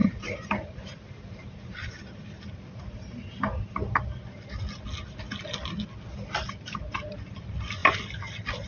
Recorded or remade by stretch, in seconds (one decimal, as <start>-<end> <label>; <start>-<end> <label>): 0.0-3.6 remade; 3.6-8.7 recorded